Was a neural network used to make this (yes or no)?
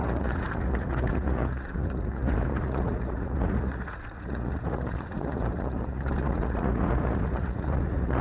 yes